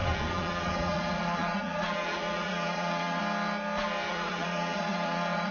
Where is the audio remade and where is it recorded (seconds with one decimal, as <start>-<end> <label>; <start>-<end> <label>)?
0.0-3.2 remade; 3.2-4.1 recorded; 4.1-5.5 remade